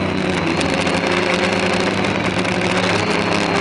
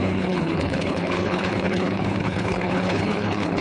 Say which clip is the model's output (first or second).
second